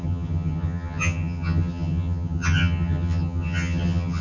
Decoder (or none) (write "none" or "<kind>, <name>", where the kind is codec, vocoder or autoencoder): vocoder, HiFi-GAN